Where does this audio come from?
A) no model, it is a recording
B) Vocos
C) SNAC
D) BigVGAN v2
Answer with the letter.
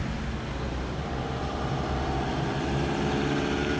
A